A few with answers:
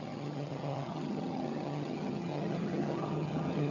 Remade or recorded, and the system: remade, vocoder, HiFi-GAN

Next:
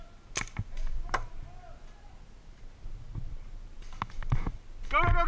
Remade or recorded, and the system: recorded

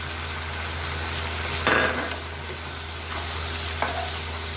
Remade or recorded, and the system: recorded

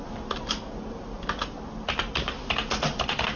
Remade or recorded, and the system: recorded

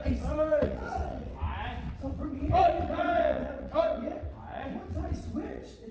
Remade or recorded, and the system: remade, vocoder, WaveNeXt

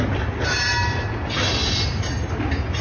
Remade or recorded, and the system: recorded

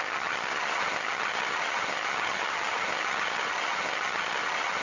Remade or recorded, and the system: remade, vocoder, HiFi-GAN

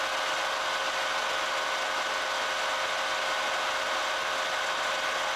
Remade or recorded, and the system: recorded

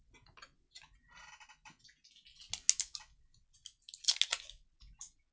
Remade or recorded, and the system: recorded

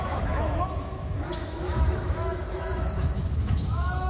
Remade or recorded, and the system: remade, autoencoder, DAC-VAE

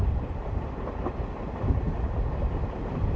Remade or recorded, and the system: recorded